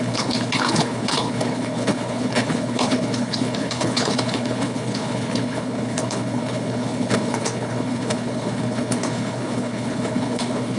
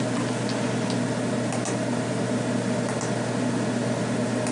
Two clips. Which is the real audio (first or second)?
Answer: second